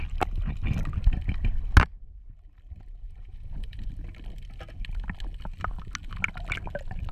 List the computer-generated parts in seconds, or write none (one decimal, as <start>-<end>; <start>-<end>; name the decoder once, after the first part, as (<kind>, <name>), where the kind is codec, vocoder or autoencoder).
3.2-3.9 (vocoder, Vocos)